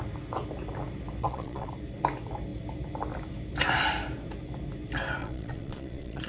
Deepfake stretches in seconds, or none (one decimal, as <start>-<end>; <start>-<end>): 1.2-1.7; 5.2-6.3